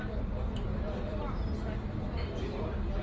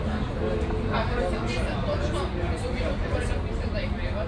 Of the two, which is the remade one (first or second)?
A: first